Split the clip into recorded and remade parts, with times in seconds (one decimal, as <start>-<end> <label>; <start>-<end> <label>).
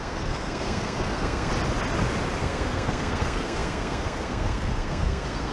0.0-1.5 remade; 1.5-2.4 recorded; 2.4-5.5 remade